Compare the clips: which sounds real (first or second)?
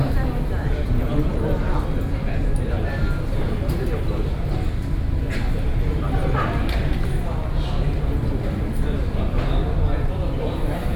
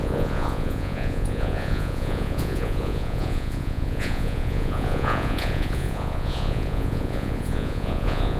first